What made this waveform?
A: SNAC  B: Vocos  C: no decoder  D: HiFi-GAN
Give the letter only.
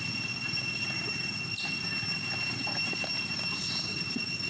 C